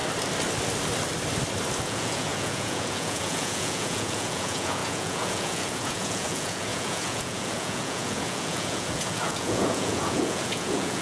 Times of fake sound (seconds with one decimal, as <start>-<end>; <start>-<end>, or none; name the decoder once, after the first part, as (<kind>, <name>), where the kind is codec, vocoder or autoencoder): 1.8-11.0 (vocoder, Vocos)